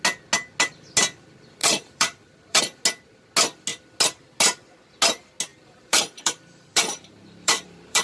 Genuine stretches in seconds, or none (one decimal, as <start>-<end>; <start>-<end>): 0.0-1.6; 2.6-5.5